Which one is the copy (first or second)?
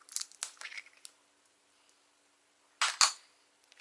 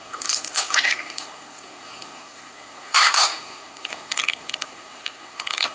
second